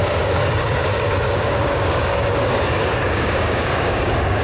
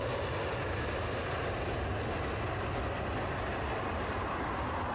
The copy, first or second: first